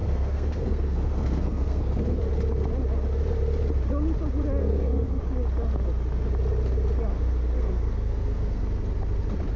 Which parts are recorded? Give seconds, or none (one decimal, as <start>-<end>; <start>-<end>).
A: 2.2-4.6; 5.2-7.1; 8.6-9.6